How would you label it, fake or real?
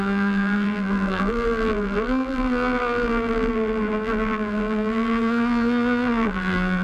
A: fake